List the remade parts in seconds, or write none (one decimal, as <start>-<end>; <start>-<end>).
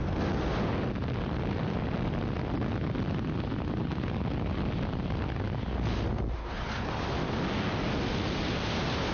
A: 6.4-6.9